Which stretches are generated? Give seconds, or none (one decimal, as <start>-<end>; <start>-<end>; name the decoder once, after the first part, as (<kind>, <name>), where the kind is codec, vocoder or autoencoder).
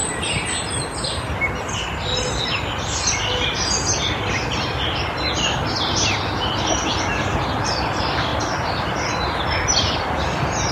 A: none